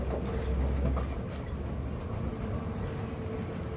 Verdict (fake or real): real